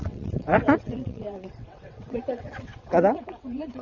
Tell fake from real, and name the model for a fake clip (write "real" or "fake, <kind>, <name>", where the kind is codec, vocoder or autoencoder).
fake, vocoder, WaveNeXt